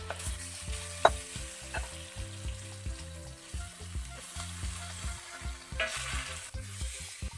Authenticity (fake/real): real